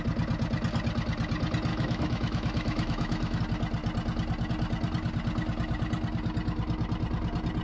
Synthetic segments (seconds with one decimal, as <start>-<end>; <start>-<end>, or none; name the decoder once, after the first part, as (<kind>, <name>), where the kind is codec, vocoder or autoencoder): 1.7-3.4 (autoencoder, DAC-VAE)